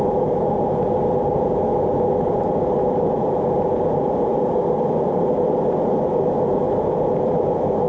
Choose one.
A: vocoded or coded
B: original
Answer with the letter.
B